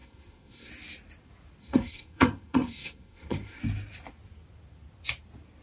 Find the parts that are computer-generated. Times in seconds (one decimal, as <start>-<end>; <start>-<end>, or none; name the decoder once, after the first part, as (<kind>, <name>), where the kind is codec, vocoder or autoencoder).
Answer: 0.0-0.7 (codec, SNAC); 1.6-3.6